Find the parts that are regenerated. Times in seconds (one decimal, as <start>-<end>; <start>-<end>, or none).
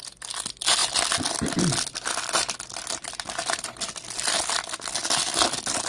none